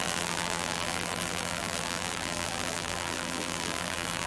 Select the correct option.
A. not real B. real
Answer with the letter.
A